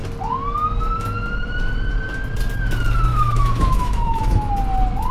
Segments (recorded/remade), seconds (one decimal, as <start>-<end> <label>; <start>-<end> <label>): 0.0-3.1 recorded; 3.1-4.5 remade; 4.5-5.1 recorded

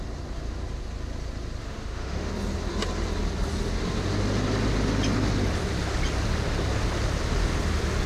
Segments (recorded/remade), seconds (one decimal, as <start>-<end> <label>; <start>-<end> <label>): 0.0-1.6 recorded; 1.6-2.3 remade; 2.3-8.1 recorded